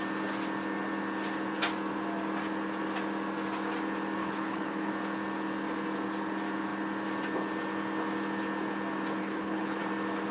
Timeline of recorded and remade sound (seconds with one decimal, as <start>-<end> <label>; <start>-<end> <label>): 0.0-4.2 recorded; 4.2-4.9 remade; 4.9-9.2 recorded; 9.2-9.8 remade; 9.8-10.3 recorded